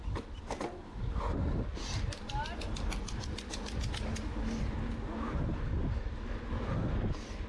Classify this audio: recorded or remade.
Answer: recorded